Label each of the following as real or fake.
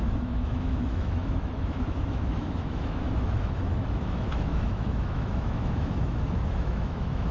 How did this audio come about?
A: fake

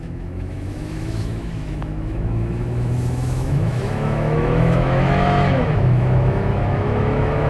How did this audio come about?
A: fake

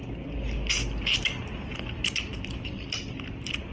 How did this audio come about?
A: real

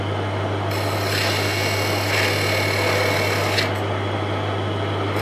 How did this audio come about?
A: real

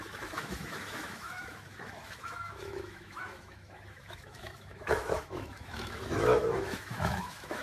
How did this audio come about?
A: fake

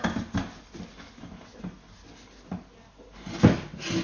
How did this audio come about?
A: real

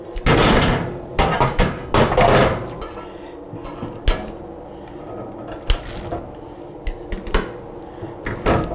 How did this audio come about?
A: real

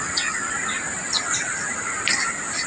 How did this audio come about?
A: real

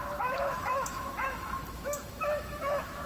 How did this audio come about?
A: fake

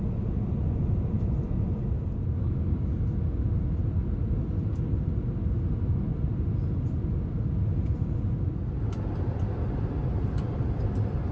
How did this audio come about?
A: real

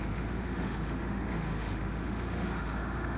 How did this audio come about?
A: fake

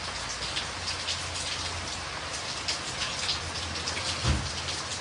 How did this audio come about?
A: real